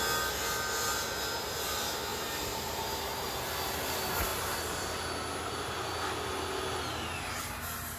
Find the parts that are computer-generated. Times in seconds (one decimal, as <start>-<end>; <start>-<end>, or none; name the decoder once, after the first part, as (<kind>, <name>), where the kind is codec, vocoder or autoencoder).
2.1-3.4 (vocoder, BigVGAN v2); 4.3-5.7

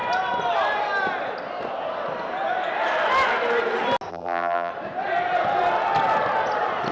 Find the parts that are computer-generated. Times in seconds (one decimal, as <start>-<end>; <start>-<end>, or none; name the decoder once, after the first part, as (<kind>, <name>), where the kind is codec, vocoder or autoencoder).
4.1-4.7 (vocoder, BigVGAN v2)

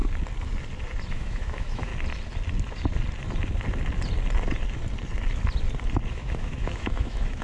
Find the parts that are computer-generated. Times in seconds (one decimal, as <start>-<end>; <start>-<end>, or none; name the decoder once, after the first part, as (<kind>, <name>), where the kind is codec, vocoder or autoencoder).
1.1-1.9 (autoencoder, DAC-VAE); 6.1-7.4

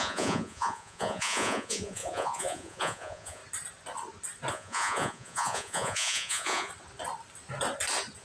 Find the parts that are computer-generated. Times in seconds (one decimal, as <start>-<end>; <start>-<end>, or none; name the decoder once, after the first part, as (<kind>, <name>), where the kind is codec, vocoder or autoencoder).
0.0-3.4 (vocoder, Vocos); 4.5-6.7

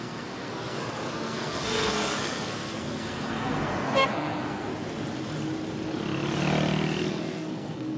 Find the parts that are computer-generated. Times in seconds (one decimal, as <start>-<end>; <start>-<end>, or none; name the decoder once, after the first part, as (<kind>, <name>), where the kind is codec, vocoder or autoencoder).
0.0-4.7 (codec, SNAC); 7.1-8.0

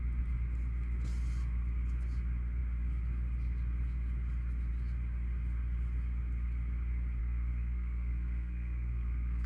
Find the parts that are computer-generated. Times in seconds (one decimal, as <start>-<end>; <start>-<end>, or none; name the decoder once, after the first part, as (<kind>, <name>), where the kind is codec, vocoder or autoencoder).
7.2-9.5 (codec, SNAC)